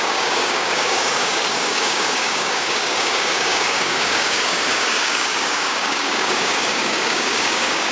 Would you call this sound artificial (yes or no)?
yes